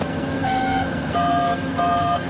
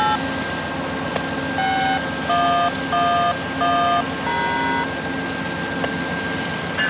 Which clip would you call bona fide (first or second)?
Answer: second